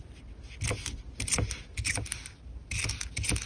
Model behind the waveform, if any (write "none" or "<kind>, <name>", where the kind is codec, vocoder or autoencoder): none